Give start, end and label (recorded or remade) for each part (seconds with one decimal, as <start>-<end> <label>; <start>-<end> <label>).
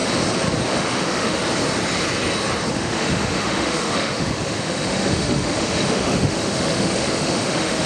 0.0-0.7 recorded; 0.7-1.4 remade; 1.4-2.7 recorded; 2.7-7.9 remade